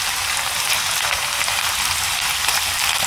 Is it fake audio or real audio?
real